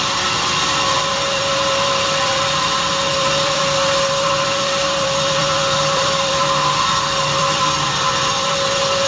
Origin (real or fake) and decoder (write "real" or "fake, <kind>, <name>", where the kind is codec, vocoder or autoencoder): fake, vocoder, BigVGAN v2